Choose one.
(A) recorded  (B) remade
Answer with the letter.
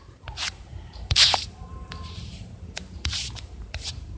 B